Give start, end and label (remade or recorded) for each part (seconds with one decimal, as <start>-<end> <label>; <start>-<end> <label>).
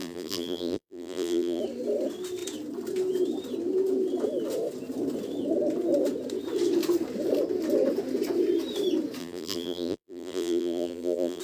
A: 0.0-1.6 remade; 1.6-9.2 recorded; 9.2-11.4 remade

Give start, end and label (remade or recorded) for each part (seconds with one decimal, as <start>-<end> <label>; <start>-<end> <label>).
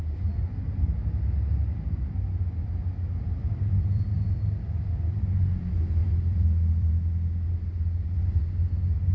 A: 0.0-3.4 recorded; 3.4-5.2 remade; 5.2-6.0 recorded; 6.0-6.9 remade; 6.9-9.1 recorded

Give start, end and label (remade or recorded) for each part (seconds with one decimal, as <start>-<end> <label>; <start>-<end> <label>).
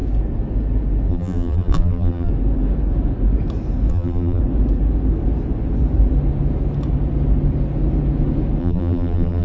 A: 0.0-1.1 recorded; 1.1-2.3 remade; 2.3-3.9 recorded; 3.9-4.4 remade; 4.4-8.6 recorded; 8.6-9.4 remade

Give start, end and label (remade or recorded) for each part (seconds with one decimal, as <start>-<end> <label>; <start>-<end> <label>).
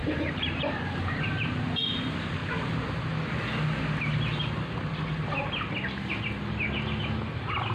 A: 0.0-1.6 remade; 1.6-7.7 recorded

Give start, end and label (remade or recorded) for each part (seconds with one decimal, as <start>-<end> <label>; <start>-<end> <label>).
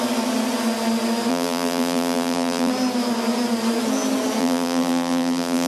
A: 0.0-1.3 recorded; 1.3-2.7 remade; 2.7-4.4 recorded; 4.4-5.7 remade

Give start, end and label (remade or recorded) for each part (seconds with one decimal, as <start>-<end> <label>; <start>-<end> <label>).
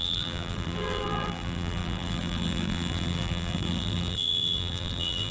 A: 0.0-5.3 remade